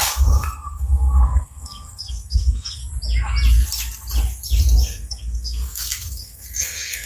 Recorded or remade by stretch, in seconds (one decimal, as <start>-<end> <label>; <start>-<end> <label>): 0.0-2.8 remade; 2.8-4.8 recorded; 4.8-7.1 remade